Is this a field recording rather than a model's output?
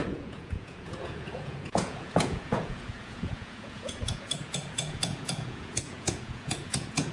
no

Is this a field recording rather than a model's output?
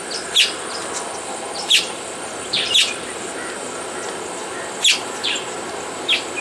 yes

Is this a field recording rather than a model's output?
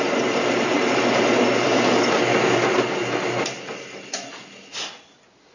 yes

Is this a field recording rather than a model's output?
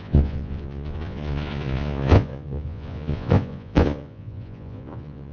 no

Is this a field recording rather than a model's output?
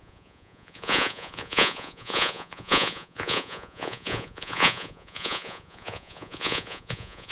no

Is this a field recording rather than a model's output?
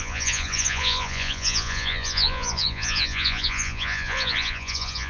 no